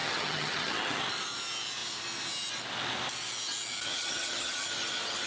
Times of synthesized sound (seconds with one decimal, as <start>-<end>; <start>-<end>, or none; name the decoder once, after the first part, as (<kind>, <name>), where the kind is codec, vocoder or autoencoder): 0.0-1.0 (vocoder, HiFi-GAN); 3.9-4.6